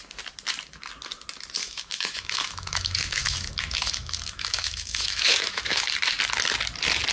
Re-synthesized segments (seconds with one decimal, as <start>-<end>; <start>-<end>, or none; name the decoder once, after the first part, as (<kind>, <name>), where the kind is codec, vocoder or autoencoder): 1.6-5.9 (autoencoder, DAC-VAE)